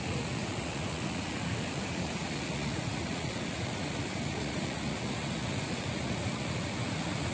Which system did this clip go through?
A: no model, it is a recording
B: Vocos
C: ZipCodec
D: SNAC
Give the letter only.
B